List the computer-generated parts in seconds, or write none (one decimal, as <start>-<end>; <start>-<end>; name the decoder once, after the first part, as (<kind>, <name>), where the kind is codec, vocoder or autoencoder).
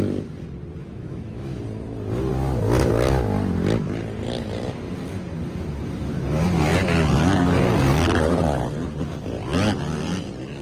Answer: 0.8-1.6 (autoencoder, DAC-VAE)